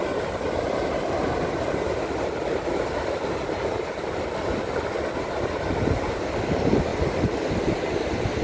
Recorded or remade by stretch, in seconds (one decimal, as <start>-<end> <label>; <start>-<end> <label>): 0.0-8.4 recorded